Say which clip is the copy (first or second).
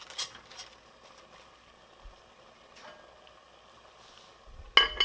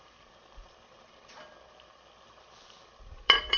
second